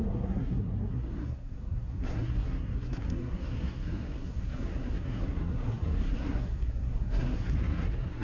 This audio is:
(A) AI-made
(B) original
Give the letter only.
A